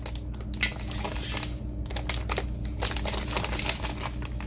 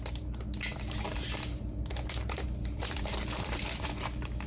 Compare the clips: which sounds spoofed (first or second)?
second